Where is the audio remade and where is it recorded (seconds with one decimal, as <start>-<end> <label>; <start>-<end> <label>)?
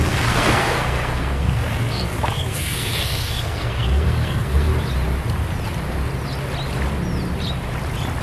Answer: 0.0-4.7 remade; 4.7-8.2 recorded